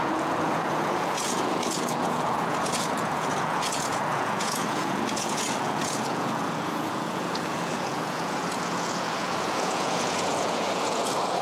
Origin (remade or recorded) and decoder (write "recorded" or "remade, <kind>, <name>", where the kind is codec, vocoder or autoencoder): remade, vocoder, Vocos